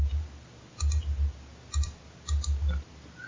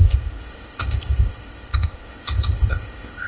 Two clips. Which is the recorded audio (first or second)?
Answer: first